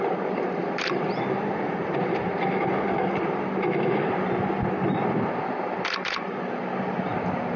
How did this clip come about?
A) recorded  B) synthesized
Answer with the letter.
A